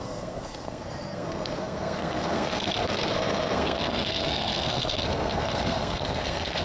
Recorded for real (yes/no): no